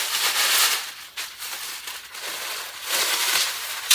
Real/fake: real